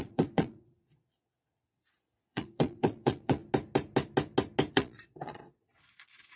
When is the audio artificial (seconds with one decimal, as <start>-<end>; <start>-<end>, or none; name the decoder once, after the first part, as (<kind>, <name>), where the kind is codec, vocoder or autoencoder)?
0.0-3.4 (vocoder, Vocos); 4.7-6.4